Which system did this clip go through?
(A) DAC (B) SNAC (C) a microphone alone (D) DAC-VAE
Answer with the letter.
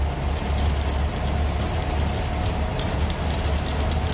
C